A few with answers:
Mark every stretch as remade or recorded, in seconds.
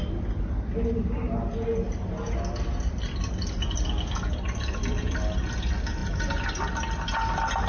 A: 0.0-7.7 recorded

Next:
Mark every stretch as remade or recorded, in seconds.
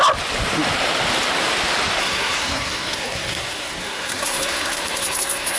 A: 0.0-2.0 recorded; 2.0-5.6 remade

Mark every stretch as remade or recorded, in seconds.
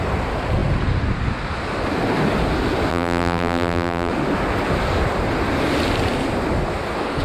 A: 0.0-2.9 recorded; 2.9-4.1 remade; 4.1-7.2 recorded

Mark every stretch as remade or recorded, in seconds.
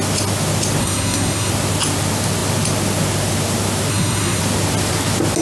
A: 0.0-0.8 recorded; 0.8-1.5 remade; 1.5-3.9 recorded; 3.9-4.4 remade; 4.4-5.4 recorded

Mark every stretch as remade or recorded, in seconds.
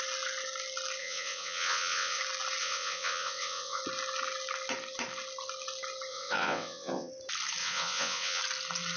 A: 0.0-1.0 recorded; 1.0-2.2 remade; 2.2-2.6 recorded; 2.6-3.8 remade; 3.8-6.1 recorded; 6.1-7.1 remade; 7.1-7.6 recorded; 7.6-8.4 remade; 8.4-9.0 recorded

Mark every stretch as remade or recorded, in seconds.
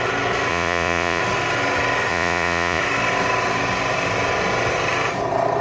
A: 0.0-0.5 recorded; 0.5-1.2 remade; 1.2-2.1 recorded; 2.1-2.8 remade; 2.8-5.6 recorded